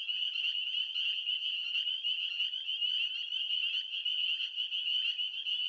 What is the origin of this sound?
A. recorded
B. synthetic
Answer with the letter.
A